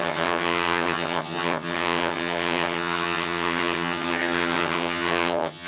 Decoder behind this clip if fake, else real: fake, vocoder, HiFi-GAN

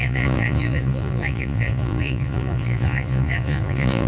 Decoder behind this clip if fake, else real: fake, vocoder, Vocos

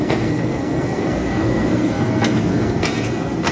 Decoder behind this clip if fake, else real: fake, codec, SNAC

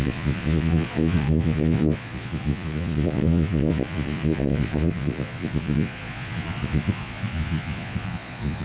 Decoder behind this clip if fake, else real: fake, vocoder, Vocos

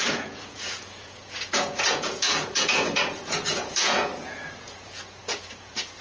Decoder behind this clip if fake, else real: fake, vocoder, Vocos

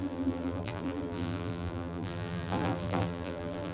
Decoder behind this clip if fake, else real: fake, vocoder, BigVGAN v2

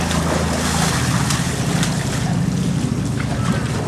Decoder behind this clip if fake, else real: real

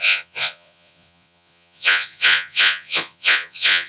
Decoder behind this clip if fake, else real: fake, vocoder, Vocos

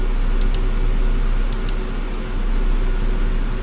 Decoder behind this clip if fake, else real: real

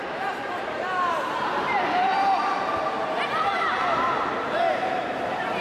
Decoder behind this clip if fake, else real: fake, vocoder, BigVGAN v2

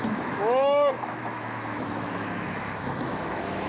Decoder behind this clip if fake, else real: fake, autoencoder, DAC-VAE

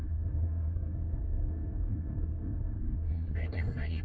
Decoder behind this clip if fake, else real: fake, codec, SNAC